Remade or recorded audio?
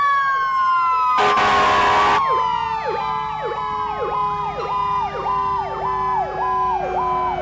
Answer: recorded